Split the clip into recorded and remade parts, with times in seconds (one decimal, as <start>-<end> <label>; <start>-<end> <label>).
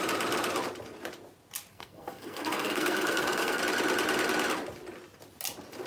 0.0-1.7 recorded; 1.7-3.6 remade; 3.6-5.9 recorded